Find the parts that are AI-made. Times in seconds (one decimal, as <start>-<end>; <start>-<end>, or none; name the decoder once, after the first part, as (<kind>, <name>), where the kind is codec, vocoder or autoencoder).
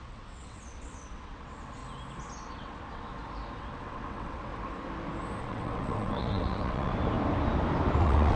0.0-1.8 (vocoder, WaveNeXt); 2.5-3.1; 3.6-4.5; 5.4-6.9; 8.0-8.4